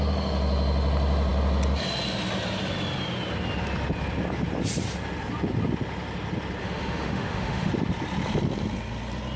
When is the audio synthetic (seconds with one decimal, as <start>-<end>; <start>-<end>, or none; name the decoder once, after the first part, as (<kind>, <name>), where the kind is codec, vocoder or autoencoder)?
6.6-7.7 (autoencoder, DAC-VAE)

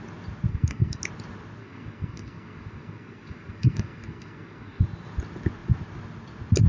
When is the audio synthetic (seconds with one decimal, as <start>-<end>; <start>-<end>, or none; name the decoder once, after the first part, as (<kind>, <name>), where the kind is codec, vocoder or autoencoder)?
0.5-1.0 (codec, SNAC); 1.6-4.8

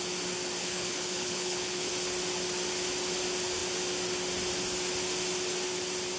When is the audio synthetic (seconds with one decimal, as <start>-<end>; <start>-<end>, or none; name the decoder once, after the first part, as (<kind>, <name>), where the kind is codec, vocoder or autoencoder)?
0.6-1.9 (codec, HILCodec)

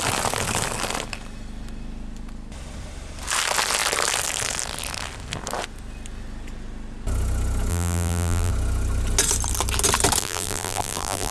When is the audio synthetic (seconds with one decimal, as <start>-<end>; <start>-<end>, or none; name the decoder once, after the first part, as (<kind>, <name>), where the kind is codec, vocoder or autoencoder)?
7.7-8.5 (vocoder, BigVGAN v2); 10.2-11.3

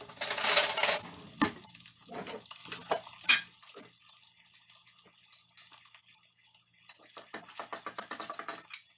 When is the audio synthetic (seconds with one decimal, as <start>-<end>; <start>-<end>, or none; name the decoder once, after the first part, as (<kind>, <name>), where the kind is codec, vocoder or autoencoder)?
none

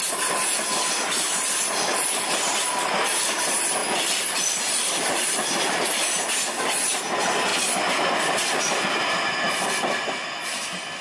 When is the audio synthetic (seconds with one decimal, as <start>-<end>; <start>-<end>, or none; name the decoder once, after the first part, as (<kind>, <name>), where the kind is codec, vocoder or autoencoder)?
3.8-6.3 (vocoder, BigVGAN v2)

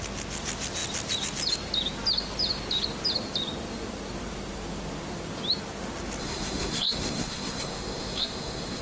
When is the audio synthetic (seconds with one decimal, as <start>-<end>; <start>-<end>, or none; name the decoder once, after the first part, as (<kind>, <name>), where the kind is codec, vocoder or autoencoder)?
6.2-8.8 (codec, SNAC)